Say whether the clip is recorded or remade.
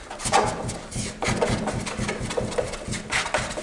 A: recorded